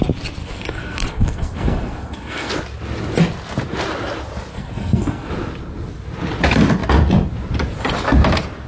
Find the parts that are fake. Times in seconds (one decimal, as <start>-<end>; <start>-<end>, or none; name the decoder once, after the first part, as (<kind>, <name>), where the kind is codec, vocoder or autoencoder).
0.4-2.5 (codec, SNAC); 4.5-5.3